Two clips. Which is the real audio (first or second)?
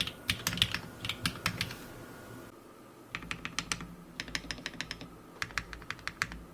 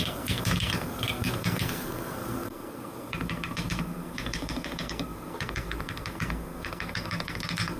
first